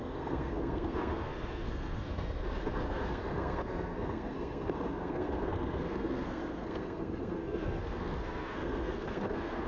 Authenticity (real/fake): fake